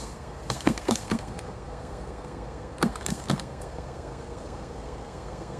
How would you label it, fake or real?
fake